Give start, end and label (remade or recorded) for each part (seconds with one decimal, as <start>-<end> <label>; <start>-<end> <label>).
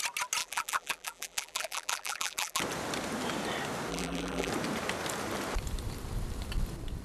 0.0-0.4 recorded; 0.4-2.6 remade; 2.6-3.9 recorded; 3.9-4.5 remade; 4.5-7.0 recorded